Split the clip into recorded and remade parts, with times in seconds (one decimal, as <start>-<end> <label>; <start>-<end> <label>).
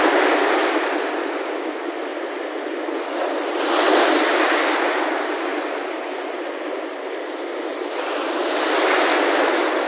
0.0-9.9 recorded